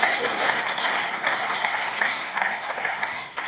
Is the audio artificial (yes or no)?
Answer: yes